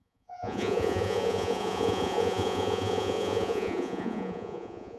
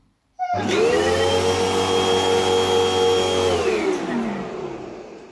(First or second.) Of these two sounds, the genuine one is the second